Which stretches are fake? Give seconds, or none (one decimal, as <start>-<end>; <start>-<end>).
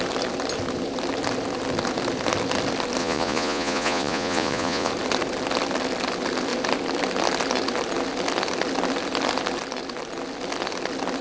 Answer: 3.0-4.9